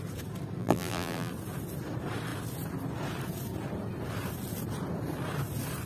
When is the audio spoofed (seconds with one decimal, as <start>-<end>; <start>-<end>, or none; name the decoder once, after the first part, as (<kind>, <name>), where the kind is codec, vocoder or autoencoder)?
0.6-1.3 (vocoder, BigVGAN v2)